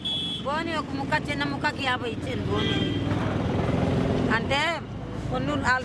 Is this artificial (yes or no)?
no